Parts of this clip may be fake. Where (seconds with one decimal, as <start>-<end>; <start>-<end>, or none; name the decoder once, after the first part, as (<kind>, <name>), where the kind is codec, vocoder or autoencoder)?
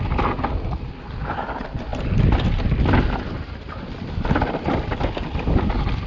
none